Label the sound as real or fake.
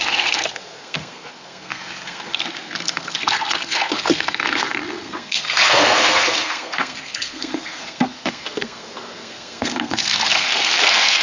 fake